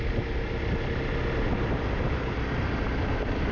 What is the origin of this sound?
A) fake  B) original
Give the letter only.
B